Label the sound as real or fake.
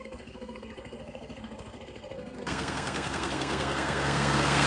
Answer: fake